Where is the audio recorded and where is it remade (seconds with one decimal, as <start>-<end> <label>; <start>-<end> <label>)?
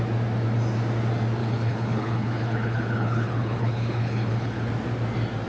0.0-1.4 recorded; 1.4-4.7 remade; 4.7-5.5 recorded